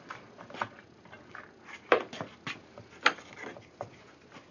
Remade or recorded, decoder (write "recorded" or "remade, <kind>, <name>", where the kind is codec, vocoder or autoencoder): recorded